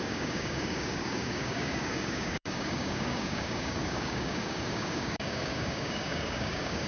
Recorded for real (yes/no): no